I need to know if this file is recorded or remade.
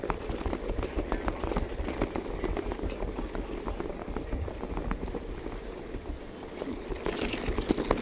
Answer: recorded